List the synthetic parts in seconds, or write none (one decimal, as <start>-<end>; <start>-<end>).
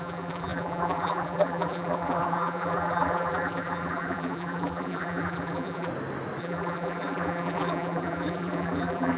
0.0-5.9; 6.4-9.2